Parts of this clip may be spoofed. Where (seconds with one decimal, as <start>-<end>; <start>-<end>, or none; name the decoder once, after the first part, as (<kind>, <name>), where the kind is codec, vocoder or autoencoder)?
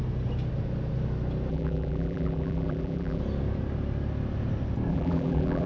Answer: 1.5-3.2 (vocoder, BigVGAN v2); 4.9-5.7